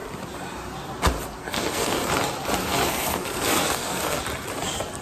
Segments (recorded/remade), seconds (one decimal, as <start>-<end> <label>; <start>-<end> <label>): 0.0-1.4 recorded; 1.4-2.1 remade; 2.1-2.6 recorded; 2.6-4.2 remade; 4.2-5.0 recorded